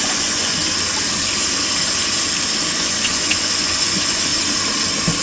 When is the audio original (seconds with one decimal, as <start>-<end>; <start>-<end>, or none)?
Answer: 0.6-2.6; 4.3-5.2